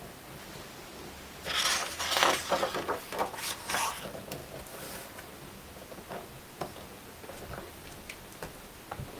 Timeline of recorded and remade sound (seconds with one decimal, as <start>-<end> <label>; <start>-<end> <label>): 0.0-9.2 recorded